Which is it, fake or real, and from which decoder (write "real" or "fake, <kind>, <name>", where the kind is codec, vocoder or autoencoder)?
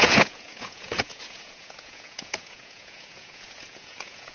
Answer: fake, vocoder, Vocos